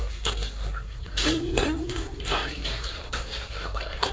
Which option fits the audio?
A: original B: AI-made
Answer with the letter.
B